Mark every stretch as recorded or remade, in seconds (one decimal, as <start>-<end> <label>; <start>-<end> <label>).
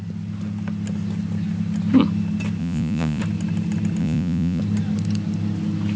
0.0-2.6 recorded; 2.6-3.2 remade; 3.2-4.0 recorded; 4.0-4.6 remade; 4.6-6.0 recorded